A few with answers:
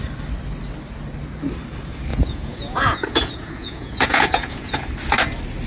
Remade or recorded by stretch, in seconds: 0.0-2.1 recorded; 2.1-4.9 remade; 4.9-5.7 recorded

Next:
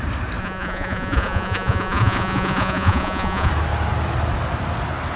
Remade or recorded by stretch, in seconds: 0.0-0.4 recorded; 0.4-3.5 remade; 3.5-5.2 recorded